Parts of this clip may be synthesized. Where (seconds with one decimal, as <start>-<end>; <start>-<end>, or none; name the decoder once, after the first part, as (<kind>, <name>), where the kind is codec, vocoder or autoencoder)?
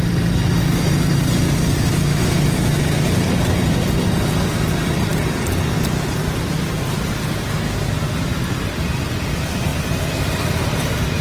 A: none